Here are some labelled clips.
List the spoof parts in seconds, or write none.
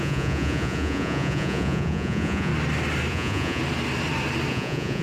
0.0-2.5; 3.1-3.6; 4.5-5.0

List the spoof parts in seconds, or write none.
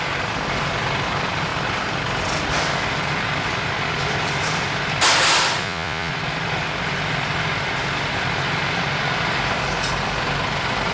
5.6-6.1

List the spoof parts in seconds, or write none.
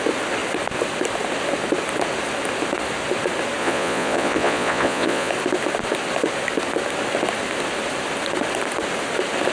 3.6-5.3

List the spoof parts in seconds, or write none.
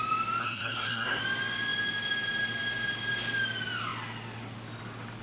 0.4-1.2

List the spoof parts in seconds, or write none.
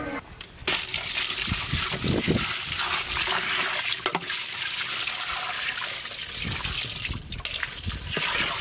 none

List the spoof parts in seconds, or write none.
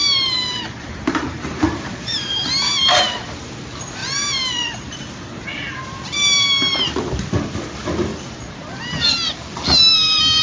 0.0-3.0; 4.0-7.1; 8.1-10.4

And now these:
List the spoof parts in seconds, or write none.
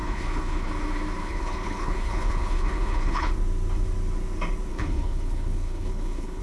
0.0-0.7; 1.2-3.3; 4.7-6.4